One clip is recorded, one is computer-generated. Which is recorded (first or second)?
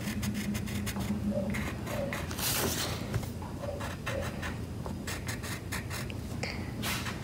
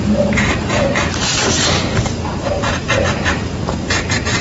first